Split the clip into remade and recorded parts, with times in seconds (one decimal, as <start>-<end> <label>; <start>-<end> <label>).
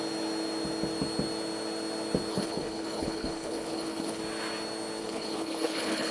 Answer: 0.0-2.3 recorded; 2.3-4.2 remade; 4.2-5.0 recorded; 5.0-6.1 remade